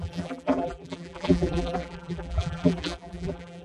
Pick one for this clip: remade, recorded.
remade